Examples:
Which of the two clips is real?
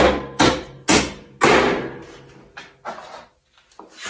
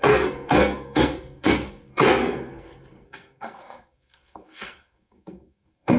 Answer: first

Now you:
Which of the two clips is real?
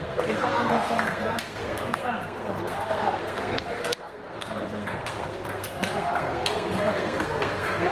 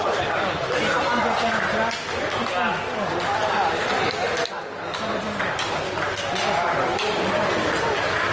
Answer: second